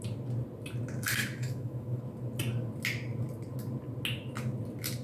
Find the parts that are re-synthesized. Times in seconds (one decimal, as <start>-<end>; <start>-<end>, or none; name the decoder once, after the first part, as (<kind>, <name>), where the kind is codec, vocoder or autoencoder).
1.2-2.0 (autoencoder, DAC-VAE)